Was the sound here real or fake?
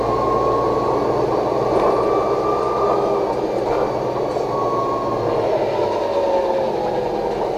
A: real